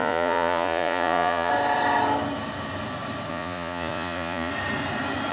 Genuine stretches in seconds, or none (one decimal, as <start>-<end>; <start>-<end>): 1.5-3.3; 4.5-5.3